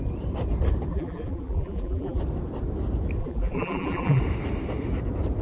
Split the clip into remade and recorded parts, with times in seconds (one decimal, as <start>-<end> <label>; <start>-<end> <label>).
0.0-0.9 recorded; 0.9-2.2 remade; 2.2-3.2 recorded; 3.2-4.2 remade; 4.2-5.4 recorded